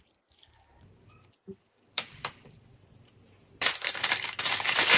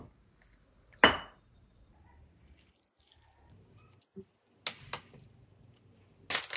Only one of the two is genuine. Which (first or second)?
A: second